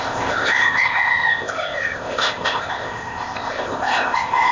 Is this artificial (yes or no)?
yes